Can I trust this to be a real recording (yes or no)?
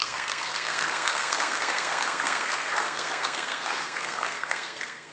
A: no